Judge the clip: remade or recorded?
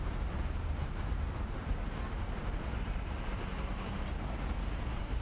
remade